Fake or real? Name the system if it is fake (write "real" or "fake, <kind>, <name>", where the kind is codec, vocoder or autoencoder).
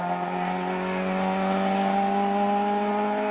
real